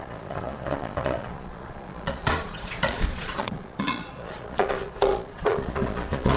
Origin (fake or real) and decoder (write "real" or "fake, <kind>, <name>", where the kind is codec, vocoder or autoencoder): fake, vocoder, Vocos